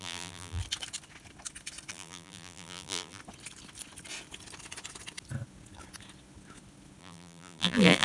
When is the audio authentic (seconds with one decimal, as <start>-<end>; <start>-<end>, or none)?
0.6-1.9; 3.2-7.0